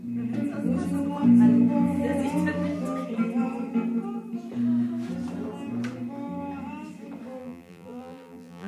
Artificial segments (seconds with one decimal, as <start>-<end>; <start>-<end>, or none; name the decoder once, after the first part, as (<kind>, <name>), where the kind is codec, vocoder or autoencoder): 7.4-8.7 (vocoder, BigVGAN v2)